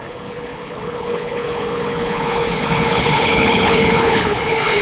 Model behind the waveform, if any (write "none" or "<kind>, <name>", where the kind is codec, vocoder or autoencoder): codec, HILCodec